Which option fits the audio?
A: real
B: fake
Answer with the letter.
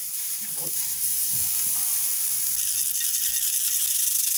A